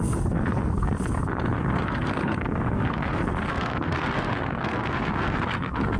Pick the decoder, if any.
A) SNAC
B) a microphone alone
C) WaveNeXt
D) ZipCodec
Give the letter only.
A